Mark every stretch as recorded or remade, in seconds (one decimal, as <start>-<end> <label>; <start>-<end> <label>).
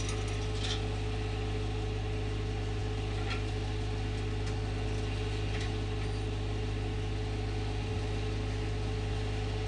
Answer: 0.0-9.7 recorded